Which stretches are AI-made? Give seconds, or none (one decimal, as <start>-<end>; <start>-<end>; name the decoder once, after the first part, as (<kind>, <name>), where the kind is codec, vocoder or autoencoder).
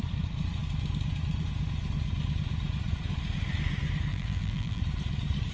4.1-4.8 (vocoder, BigVGAN v2)